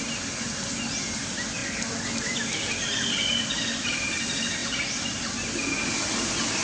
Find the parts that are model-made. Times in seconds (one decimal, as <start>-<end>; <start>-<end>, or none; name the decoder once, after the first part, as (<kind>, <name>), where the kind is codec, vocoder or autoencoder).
none